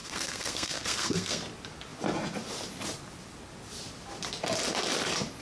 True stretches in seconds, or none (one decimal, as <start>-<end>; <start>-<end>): 1.4-5.4